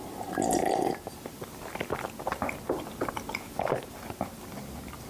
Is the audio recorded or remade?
recorded